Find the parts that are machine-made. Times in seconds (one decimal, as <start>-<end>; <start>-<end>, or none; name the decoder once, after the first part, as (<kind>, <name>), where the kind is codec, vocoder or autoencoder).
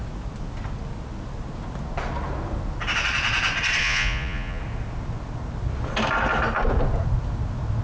3.8-4.6 (vocoder, Vocos)